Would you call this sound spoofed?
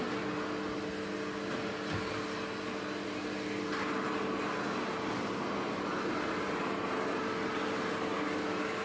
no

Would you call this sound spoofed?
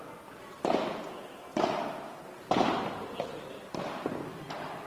no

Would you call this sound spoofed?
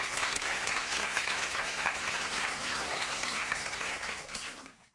yes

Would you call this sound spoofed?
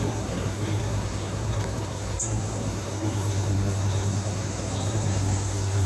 yes